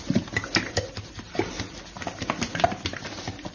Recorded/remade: recorded